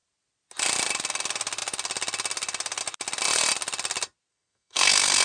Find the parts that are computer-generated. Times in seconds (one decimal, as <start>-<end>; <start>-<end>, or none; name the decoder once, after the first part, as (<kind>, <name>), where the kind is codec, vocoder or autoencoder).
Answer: 4.3-5.2 (codec, SNAC)